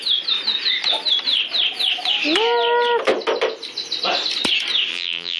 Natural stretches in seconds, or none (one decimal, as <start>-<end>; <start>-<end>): 0.0-4.9

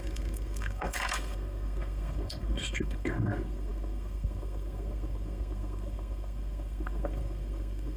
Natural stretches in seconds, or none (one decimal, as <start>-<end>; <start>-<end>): none

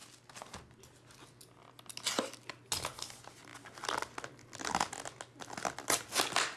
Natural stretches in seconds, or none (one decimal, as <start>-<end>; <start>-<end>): 0.0-6.6

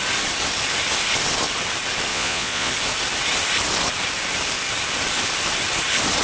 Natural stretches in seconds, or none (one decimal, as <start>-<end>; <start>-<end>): 0.0-2.1; 2.7-6.2

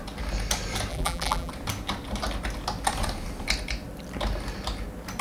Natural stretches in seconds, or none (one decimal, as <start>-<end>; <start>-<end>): 0.0-0.9; 1.5-5.2

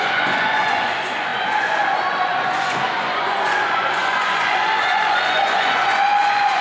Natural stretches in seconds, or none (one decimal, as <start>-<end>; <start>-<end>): none

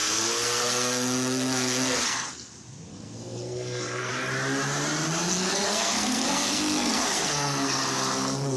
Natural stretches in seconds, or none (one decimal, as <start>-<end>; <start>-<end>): 2.5-2.9; 4.1-5.3